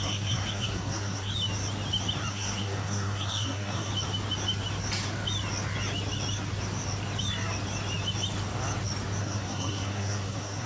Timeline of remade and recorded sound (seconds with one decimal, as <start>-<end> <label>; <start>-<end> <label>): 0.0-1.3 remade; 1.3-2.3 recorded; 2.3-3.9 remade; 3.9-9.2 recorded; 9.2-10.7 remade